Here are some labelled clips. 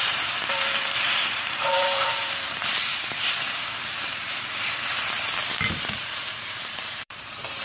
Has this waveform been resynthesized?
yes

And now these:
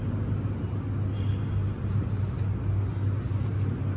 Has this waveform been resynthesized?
no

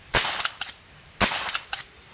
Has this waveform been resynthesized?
yes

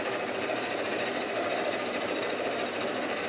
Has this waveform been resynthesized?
yes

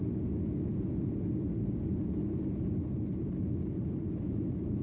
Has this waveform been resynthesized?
no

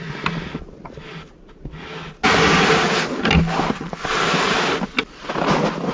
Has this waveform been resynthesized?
no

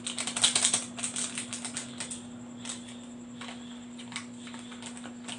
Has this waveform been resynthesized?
no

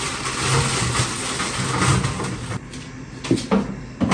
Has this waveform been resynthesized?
no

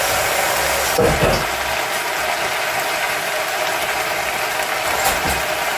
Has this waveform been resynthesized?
yes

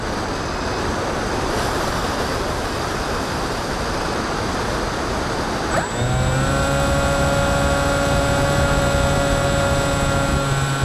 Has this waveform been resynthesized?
no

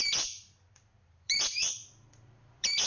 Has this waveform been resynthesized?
yes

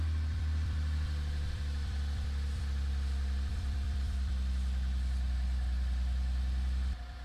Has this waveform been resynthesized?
yes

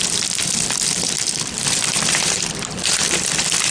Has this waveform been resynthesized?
yes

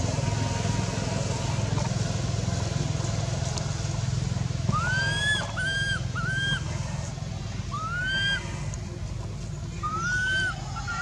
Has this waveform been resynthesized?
no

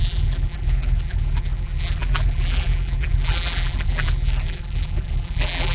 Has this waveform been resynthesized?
yes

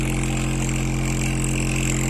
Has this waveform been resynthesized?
no